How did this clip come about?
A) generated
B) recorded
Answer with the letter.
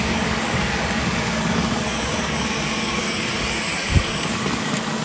A